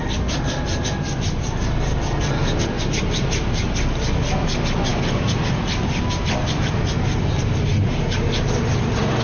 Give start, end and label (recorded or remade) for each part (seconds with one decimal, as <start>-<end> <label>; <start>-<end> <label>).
0.0-9.2 recorded